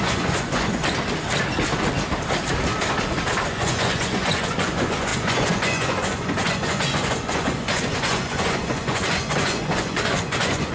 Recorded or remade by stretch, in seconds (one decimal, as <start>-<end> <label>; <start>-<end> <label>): 0.0-0.8 remade; 0.8-3.5 recorded; 3.5-10.7 remade